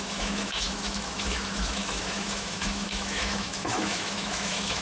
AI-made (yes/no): yes